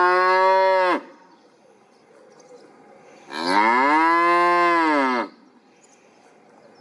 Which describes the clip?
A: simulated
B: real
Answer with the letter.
B